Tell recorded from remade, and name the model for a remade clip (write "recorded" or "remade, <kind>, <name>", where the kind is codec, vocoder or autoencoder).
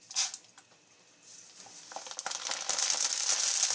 recorded